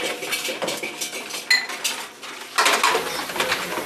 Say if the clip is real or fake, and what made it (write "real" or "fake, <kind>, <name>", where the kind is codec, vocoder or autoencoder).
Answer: real